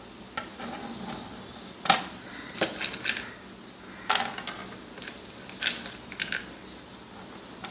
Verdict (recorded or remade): recorded